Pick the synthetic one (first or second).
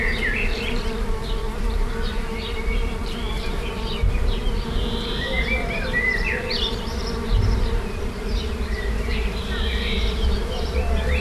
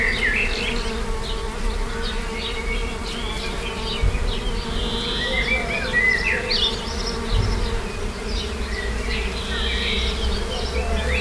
first